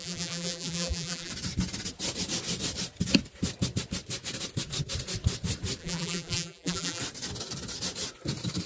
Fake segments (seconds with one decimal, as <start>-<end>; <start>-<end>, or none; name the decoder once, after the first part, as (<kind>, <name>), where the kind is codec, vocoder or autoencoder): 0.0-1.3 (vocoder, BigVGAN v2); 5.8-7.0